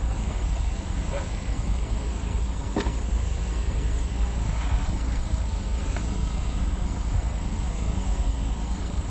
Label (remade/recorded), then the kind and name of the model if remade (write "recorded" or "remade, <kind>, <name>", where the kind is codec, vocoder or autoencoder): remade, codec, SNAC